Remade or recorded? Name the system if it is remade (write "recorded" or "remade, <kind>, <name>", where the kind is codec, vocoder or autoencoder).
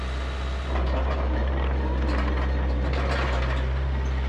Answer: recorded